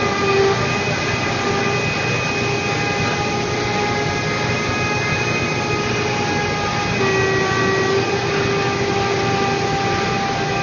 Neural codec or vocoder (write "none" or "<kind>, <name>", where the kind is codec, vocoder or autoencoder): none